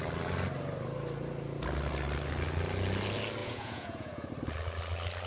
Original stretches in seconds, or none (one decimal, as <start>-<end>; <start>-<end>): 0.0-3.4; 4.3-5.3